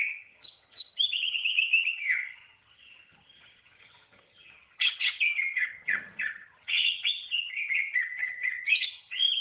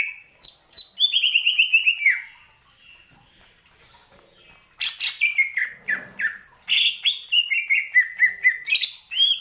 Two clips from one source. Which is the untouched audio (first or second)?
second